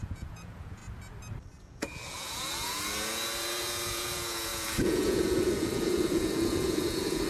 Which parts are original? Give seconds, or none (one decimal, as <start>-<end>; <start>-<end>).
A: 0.8-1.6